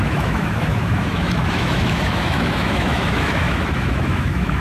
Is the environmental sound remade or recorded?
remade